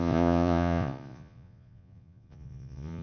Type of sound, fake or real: fake